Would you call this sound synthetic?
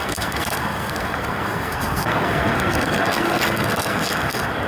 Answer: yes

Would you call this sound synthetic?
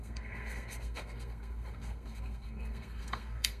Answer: yes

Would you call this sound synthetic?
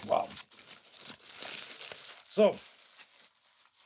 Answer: no